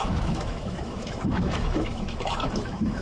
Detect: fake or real fake